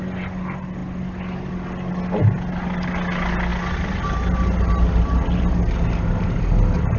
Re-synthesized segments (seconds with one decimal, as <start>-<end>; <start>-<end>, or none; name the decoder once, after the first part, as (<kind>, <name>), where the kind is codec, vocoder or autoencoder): none